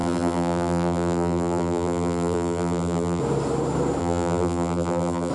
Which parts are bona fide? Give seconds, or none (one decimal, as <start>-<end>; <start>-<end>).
3.2-4.0